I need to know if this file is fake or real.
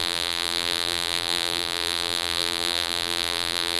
fake